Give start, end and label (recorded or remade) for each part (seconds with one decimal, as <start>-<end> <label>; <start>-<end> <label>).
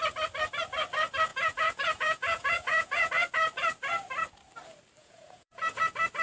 0.0-1.3 recorded; 1.3-3.1 remade; 3.1-5.0 recorded; 5.0-5.8 remade; 5.8-6.2 recorded